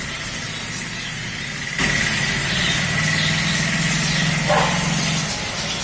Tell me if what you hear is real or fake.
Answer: real